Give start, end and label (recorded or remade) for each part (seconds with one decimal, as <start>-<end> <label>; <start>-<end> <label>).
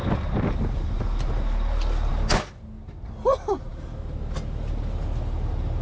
0.0-5.8 recorded